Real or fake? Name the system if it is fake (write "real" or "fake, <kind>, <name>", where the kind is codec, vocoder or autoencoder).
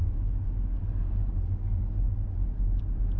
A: real